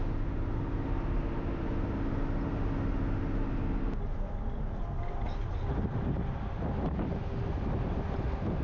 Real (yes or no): yes